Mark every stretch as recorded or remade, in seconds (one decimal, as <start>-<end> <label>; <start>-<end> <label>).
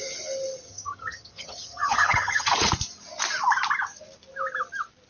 0.0-0.7 recorded; 0.7-2.7 remade; 2.7-5.1 recorded